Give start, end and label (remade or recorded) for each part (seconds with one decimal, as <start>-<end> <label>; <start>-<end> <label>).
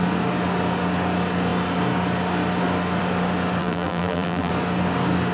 0.0-3.6 recorded; 3.6-4.5 remade; 4.5-5.3 recorded